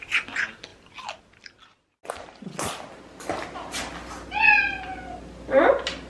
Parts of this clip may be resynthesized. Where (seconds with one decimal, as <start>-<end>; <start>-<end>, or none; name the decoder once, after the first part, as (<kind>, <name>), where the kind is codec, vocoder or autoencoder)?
none